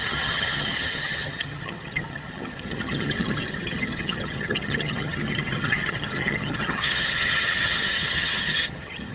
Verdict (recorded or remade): remade